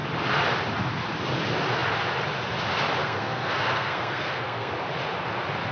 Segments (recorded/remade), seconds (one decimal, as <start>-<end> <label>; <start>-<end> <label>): 0.0-3.0 recorded; 3.0-4.7 remade; 4.7-5.7 recorded